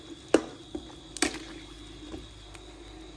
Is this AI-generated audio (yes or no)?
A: no